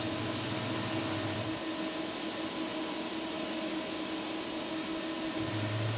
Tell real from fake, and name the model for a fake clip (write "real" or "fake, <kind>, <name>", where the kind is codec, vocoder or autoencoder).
real